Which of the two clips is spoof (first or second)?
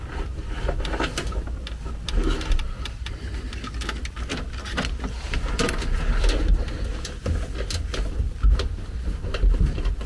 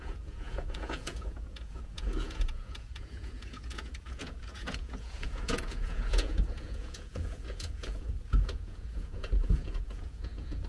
second